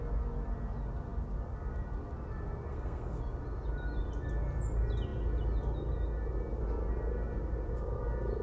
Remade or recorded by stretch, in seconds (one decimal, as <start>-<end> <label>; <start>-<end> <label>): 0.0-2.7 recorded; 2.7-3.2 remade; 3.2-8.4 recorded